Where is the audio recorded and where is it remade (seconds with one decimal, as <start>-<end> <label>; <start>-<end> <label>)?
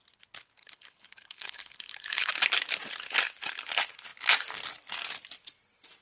0.0-0.6 recorded; 0.6-2.3 remade; 2.3-6.0 recorded